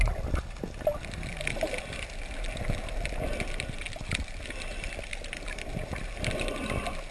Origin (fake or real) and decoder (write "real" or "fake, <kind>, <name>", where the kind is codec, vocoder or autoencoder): real